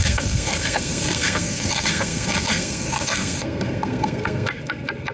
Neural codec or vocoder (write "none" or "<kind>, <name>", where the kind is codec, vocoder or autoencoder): codec, SNAC